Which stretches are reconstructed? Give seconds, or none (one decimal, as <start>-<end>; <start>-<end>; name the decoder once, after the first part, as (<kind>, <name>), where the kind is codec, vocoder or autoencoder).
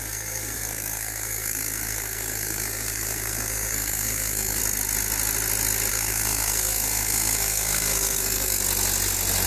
0.0-4.6 (codec, SNAC); 5.9-8.6